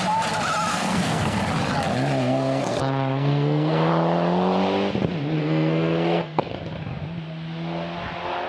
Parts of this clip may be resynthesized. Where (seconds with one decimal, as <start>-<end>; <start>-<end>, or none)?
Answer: 0.7-1.4; 2.2-3.9; 5.4-6.5